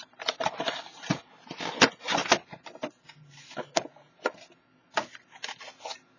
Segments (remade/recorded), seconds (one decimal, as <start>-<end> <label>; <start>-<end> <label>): 0.0-2.2 remade; 2.2-6.2 recorded